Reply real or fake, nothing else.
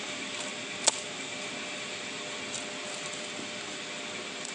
real